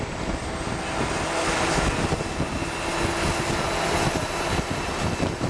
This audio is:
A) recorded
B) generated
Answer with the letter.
A